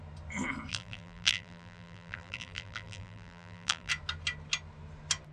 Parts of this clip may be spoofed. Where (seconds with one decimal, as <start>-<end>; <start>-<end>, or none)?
0.7-3.9

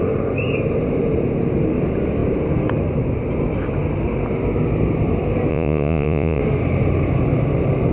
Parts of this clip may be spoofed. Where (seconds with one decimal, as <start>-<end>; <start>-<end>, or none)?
5.5-6.4

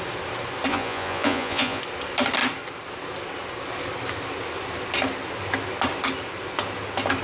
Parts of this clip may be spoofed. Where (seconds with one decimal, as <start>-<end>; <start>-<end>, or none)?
0.7-1.8

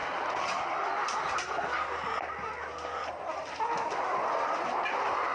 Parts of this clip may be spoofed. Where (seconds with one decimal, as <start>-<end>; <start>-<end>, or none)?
none

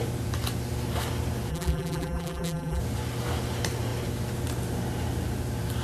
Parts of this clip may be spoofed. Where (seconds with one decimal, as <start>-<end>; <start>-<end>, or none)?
1.5-2.8

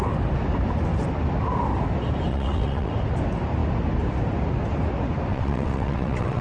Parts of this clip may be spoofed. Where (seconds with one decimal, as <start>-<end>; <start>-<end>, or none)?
2.3-2.9; 5.3-6.4

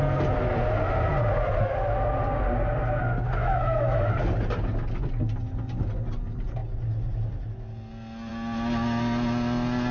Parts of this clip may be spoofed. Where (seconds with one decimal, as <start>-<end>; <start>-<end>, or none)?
3.4-4.1